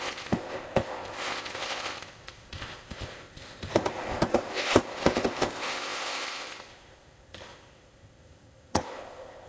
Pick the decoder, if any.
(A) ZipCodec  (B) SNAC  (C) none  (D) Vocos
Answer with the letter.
A